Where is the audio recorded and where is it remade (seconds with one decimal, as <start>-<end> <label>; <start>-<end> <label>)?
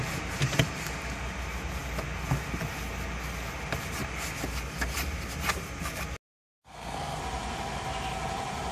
0.0-6.3 recorded; 6.3-7.2 remade; 7.2-8.7 recorded